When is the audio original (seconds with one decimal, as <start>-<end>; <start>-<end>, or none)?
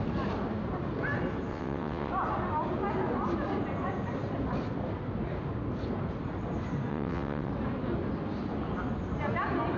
0.0-1.5; 2.1-6.9; 7.5-9.8